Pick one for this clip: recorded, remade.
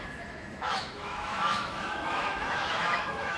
remade